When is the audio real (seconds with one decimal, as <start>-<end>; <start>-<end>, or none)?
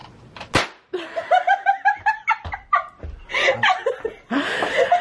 0.0-5.0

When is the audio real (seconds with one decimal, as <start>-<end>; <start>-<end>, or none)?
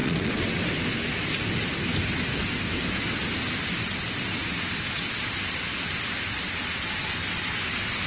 0.6-8.1